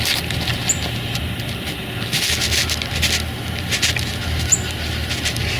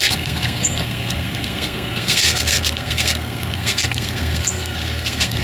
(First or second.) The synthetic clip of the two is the second